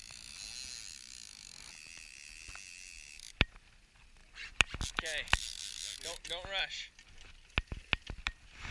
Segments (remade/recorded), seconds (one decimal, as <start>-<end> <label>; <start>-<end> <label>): 0.0-8.7 recorded